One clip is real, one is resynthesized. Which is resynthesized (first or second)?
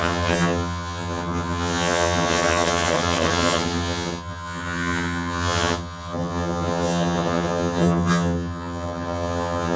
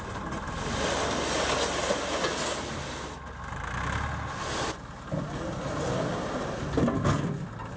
first